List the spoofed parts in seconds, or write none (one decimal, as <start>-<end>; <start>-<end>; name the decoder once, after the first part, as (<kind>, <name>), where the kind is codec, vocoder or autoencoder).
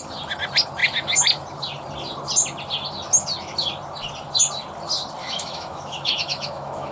5.2-6.9 (autoencoder, DAC-VAE)